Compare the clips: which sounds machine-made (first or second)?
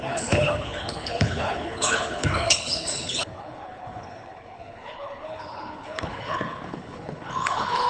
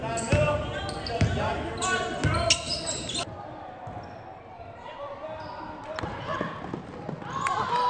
first